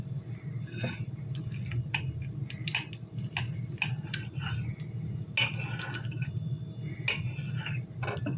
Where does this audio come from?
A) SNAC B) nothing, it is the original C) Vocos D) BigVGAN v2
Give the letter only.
B